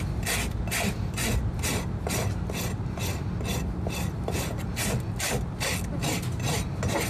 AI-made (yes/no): no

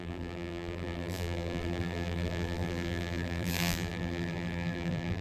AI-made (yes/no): yes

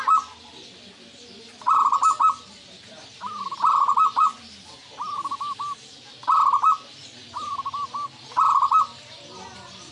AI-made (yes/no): yes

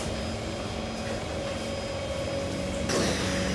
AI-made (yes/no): no